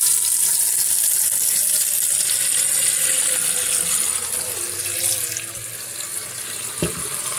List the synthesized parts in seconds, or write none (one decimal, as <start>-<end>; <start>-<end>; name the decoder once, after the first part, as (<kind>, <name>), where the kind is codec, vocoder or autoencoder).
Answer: none